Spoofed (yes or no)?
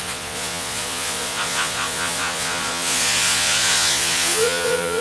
yes